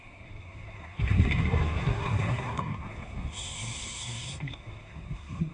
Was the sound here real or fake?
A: fake